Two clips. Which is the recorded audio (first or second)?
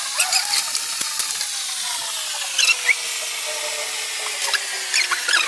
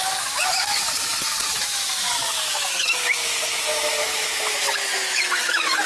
first